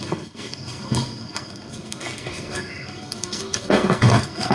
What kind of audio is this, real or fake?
fake